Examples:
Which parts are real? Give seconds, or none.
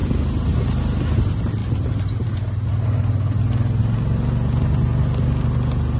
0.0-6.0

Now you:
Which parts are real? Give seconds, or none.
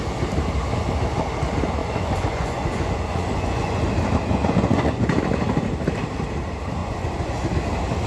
0.0-1.8; 3.8-4.3; 5.1-6.8; 7.5-8.1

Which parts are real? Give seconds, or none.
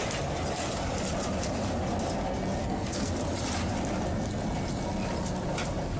0.0-2.6; 3.1-6.0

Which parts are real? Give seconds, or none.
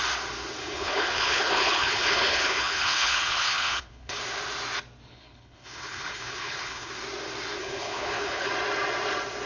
0.0-0.6; 4.2-5.1; 6.9-7.6; 8.5-9.5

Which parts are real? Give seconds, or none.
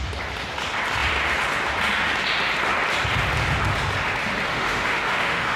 0.0-4.5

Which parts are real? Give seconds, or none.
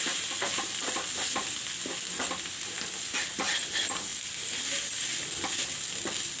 0.0-6.4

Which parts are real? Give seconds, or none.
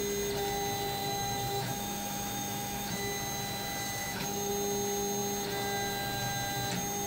0.0-1.0; 2.9-4.0; 4.5-7.1